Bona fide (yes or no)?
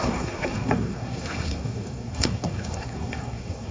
no